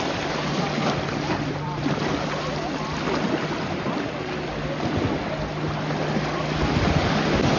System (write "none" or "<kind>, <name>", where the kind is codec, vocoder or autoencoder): none